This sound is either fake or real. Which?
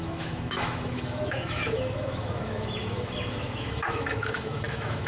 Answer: fake